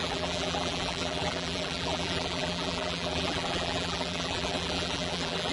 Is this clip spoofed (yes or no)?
yes